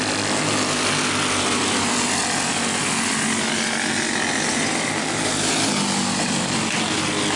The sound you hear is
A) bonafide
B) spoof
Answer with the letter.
A